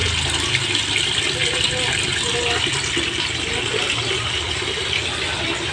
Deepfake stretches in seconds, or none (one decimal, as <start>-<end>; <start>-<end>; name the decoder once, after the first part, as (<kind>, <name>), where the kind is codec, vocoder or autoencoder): none